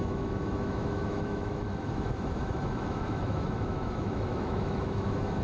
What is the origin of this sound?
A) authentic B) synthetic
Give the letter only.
B